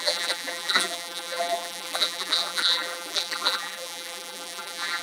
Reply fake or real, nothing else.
fake